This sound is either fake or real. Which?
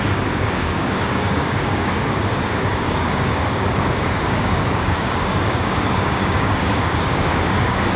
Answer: fake